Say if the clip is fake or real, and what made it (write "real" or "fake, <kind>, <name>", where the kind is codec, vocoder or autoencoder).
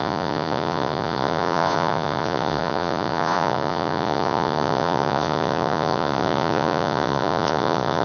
fake, vocoder, Vocos